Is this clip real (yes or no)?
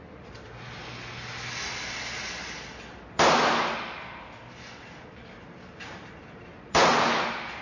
yes